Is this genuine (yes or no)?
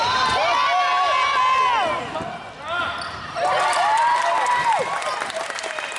yes